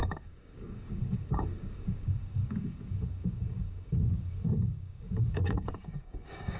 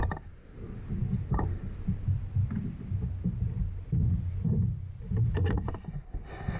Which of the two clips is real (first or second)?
second